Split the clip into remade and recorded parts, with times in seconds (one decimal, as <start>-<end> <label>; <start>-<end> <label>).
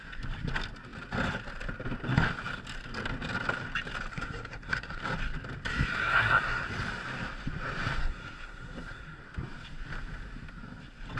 0.0-4.1 recorded; 4.1-5.0 remade; 5.0-6.0 recorded; 6.0-6.7 remade; 6.7-8.0 recorded; 8.0-9.2 remade; 9.2-11.2 recorded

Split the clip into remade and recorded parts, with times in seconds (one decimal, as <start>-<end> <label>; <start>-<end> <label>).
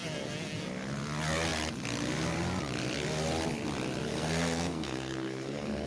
0.0-4.1 recorded; 4.1-5.9 remade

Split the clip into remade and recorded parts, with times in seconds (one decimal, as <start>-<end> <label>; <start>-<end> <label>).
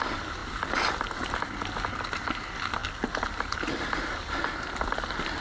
0.0-5.4 recorded